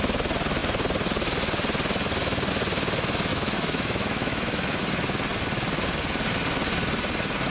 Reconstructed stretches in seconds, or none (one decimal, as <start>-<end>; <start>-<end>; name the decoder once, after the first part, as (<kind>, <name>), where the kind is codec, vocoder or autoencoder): 3.3-4.8 (autoencoder, DAC-VAE)